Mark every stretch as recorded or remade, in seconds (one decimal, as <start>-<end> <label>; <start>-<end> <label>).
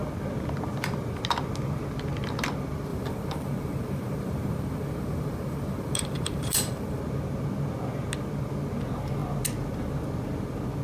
0.0-2.9 recorded; 2.9-7.0 remade; 7.0-10.8 recorded